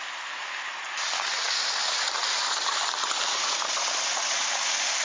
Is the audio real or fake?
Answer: real